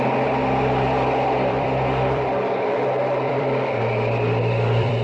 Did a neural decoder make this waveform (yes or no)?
yes